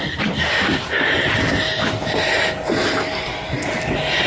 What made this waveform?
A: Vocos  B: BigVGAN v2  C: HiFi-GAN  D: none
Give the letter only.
D